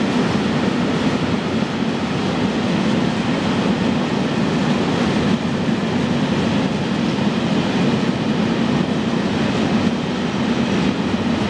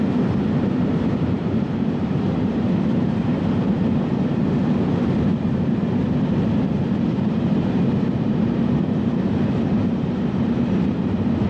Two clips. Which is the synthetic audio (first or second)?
second